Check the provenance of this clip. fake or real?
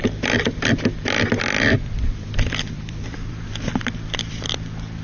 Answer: fake